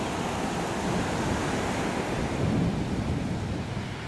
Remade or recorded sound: recorded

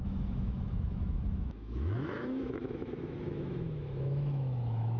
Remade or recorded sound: remade